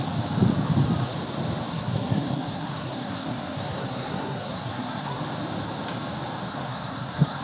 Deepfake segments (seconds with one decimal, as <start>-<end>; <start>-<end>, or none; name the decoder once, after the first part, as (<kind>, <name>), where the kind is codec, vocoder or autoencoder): 1.7-5.2 (codec, SNAC); 6.5-7.4